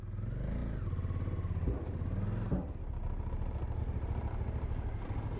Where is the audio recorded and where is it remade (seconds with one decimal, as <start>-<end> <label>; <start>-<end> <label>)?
0.0-5.4 recorded